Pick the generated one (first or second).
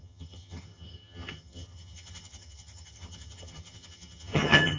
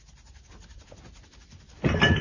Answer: first